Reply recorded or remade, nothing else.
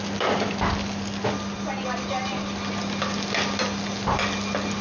recorded